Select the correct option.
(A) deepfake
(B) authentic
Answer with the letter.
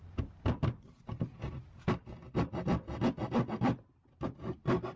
B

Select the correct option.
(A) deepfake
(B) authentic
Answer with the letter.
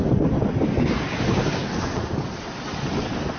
B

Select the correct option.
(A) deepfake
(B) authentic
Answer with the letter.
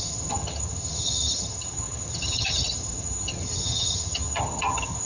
A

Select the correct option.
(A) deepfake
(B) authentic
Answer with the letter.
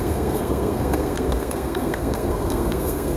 A